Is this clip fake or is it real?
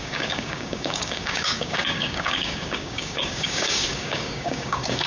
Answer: fake